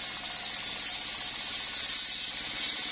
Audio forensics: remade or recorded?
recorded